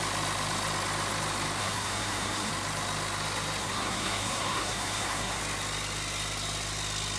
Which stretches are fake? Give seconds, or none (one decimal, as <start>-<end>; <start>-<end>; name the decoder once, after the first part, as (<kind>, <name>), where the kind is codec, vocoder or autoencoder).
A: 1.6-2.5 (codec, SNAC); 3.6-5.4